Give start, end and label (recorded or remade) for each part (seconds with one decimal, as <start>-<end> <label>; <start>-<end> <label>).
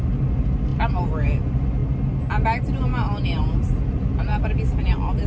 0.0-5.3 recorded